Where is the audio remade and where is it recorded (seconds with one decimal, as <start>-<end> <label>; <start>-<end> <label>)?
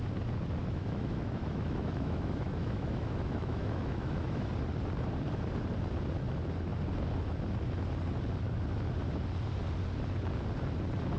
0.0-0.6 recorded; 0.6-4.5 remade; 4.5-11.2 recorded